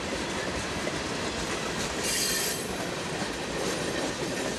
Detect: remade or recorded remade